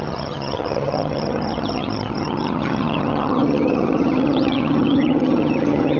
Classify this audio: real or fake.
fake